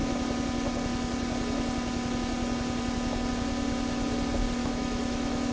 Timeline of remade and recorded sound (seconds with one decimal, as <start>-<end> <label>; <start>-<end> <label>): 0.0-4.6 recorded; 4.6-5.5 remade